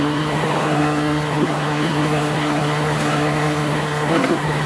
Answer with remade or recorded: remade